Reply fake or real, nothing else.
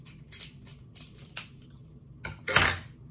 real